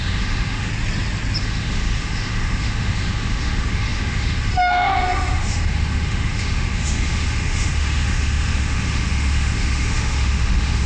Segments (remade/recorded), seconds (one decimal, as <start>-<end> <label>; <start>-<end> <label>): 0.0-0.7 remade; 0.7-1.4 recorded; 1.4-10.9 remade